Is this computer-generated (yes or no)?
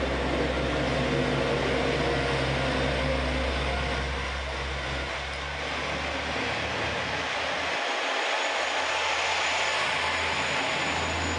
no